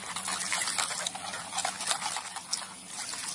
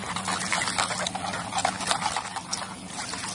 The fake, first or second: second